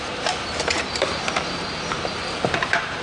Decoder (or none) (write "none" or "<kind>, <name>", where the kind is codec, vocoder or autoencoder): vocoder, BigVGAN v2